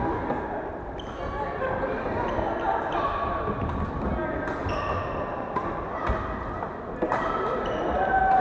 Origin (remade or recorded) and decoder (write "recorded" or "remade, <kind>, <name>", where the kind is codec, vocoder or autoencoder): recorded